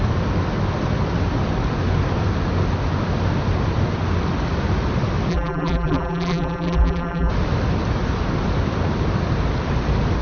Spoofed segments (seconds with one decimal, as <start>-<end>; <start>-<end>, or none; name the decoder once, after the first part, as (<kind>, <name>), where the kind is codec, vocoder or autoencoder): 5.3-7.3 (vocoder, BigVGAN v2)